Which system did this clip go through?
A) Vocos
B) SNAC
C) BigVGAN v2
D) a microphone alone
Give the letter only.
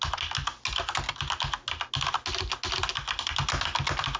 D